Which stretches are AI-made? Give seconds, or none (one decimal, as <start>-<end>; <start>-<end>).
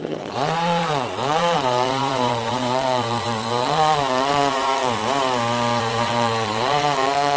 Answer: 0.0-5.0; 5.8-7.4